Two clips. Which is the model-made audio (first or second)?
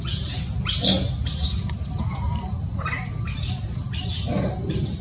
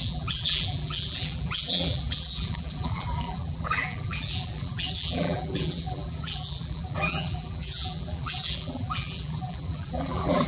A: second